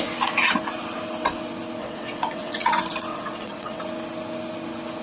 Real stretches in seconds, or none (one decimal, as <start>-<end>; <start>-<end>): 0.0-1.8; 2.7-3.1; 3.8-5.0